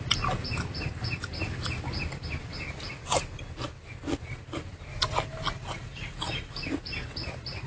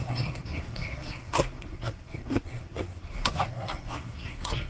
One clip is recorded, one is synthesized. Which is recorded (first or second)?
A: first